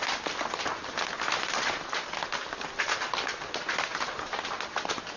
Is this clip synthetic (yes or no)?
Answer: no